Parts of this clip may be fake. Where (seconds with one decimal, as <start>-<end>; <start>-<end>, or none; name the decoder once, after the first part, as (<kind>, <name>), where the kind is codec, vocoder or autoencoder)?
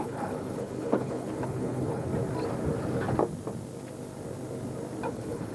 0.0-2.1 (codec, HILCodec); 5.1-5.5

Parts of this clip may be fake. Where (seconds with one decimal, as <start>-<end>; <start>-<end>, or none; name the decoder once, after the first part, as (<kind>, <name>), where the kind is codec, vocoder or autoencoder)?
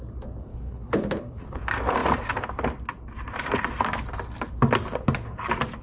0.5-1.6 (codec, HILCodec)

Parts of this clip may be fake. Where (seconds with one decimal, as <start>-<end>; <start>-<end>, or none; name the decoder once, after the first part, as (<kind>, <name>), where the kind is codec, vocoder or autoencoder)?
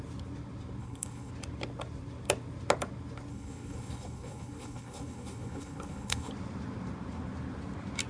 0.8-1.3 (codec, HILCodec); 3.3-6.3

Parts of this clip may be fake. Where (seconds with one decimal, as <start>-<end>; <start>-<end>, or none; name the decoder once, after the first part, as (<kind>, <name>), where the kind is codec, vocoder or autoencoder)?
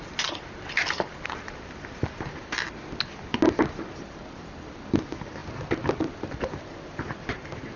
none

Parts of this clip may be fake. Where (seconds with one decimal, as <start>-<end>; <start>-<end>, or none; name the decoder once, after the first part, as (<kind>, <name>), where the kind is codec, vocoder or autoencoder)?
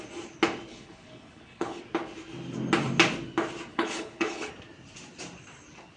0.7-1.8 (codec, HILCodec); 3.7-4.5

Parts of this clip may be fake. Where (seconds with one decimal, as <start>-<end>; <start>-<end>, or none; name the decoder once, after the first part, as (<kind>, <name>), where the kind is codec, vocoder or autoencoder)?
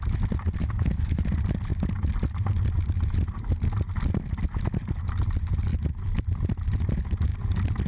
0.6-1.2 (codec, HILCodec)